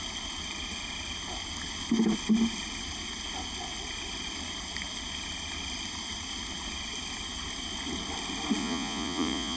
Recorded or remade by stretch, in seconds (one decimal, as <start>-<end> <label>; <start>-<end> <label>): 0.0-8.6 recorded; 8.6-9.6 remade